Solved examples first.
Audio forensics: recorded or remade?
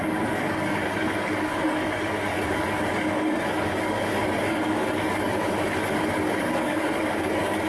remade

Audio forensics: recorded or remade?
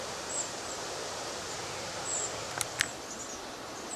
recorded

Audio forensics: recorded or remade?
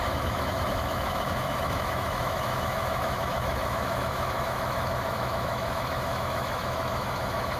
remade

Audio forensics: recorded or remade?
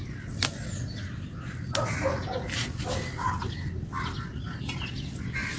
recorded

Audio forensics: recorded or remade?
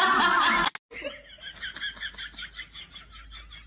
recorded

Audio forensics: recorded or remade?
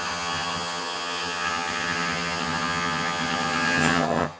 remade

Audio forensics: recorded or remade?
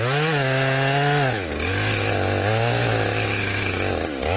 recorded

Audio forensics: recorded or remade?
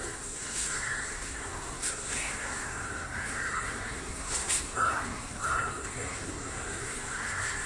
remade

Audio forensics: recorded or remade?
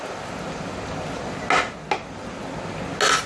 recorded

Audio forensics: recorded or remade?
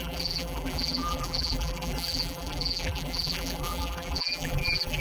remade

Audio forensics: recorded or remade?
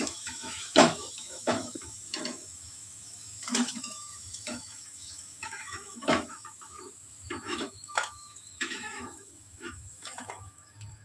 remade